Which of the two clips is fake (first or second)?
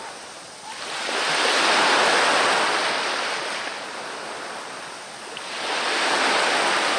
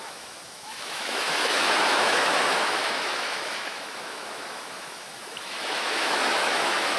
second